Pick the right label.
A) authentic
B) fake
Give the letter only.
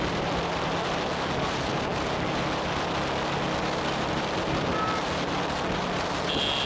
A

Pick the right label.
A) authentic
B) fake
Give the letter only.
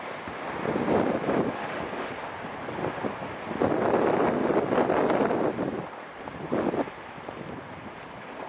A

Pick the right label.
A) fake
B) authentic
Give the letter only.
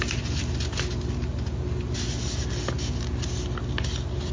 B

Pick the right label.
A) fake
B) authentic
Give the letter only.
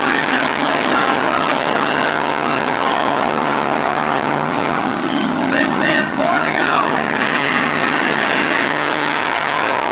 A